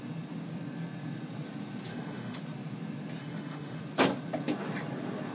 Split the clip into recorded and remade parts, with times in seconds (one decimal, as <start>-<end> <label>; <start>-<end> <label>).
0.0-1.9 recorded; 1.9-2.4 remade; 2.4-3.2 recorded; 3.2-3.8 remade; 3.8-5.3 recorded